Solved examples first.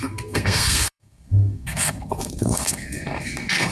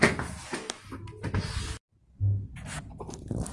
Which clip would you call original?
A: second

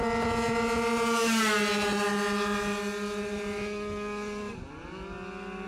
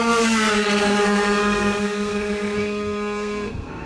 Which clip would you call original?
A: first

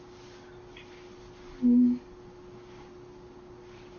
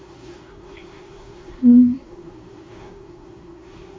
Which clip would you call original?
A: first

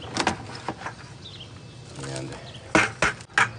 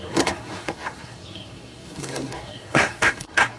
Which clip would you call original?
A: first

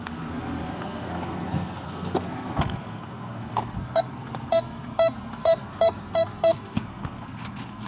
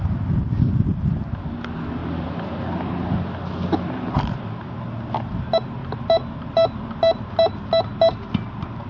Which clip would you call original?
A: second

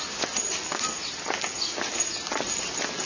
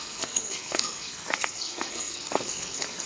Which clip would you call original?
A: first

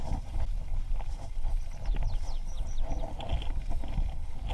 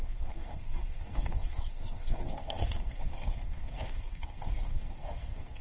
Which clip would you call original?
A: first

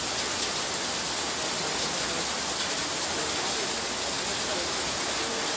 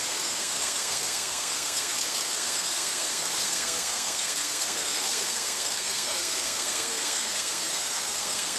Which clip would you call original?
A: first